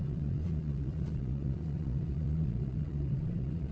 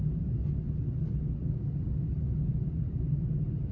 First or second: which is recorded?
second